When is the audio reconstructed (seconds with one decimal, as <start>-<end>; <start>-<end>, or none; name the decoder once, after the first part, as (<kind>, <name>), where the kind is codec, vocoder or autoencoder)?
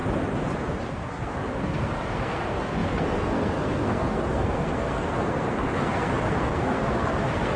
0.8-7.6 (codec, SNAC)